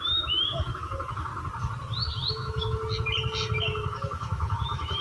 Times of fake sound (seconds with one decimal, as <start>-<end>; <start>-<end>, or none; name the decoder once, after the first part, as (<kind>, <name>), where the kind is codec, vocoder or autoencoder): 0.0-1.3 (autoencoder, DAC-VAE); 2.3-2.8; 3.6-5.0